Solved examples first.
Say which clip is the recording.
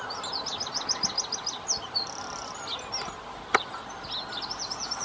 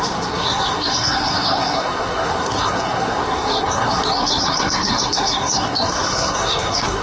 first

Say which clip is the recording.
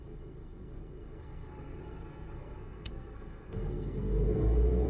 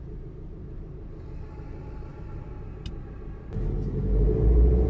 second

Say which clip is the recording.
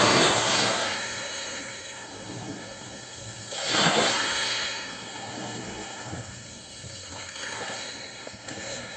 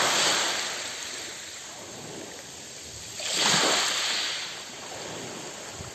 second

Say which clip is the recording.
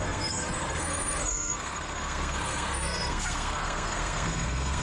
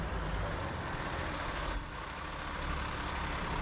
second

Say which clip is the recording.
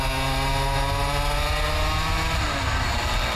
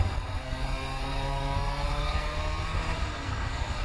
first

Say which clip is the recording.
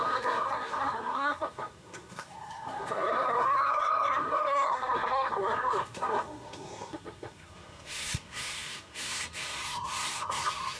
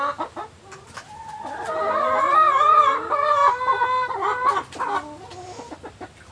second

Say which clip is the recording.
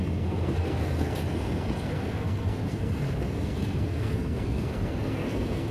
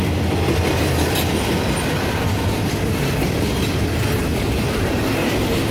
second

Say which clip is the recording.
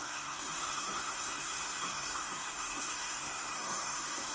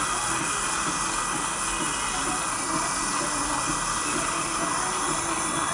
second